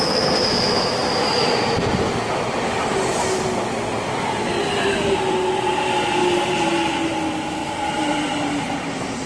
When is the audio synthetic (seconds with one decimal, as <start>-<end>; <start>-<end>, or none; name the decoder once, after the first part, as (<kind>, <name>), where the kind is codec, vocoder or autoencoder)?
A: 6.2-6.7 (vocoder, BigVGAN v2); 7.6-9.3